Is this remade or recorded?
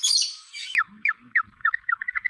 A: remade